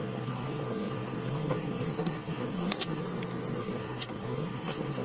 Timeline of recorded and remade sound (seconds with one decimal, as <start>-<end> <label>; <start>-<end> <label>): 0.0-3.0 remade; 3.0-3.6 recorded; 3.6-5.0 remade